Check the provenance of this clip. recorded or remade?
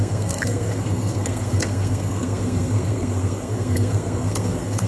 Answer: remade